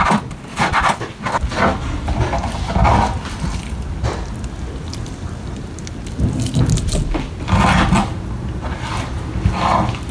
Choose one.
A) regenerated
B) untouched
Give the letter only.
B